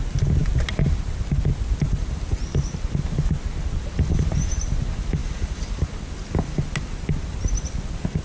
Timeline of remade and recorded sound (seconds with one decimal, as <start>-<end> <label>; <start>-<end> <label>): 0.0-8.2 recorded